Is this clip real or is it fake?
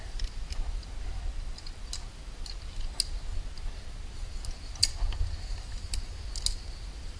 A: real